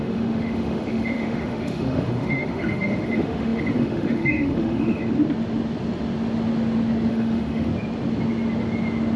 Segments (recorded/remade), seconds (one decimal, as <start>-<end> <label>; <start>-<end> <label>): 0.0-5.0 remade; 5.0-7.1 recorded; 7.1-7.7 remade; 7.7-9.2 recorded